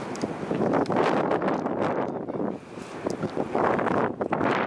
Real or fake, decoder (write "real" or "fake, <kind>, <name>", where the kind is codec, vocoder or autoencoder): real